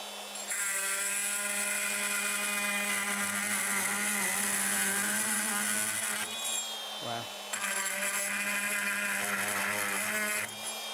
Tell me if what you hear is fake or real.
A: real